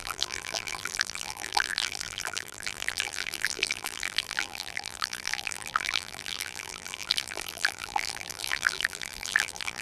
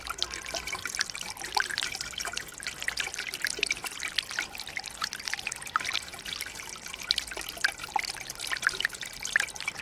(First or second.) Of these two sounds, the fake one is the first